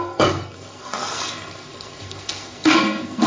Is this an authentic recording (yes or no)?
no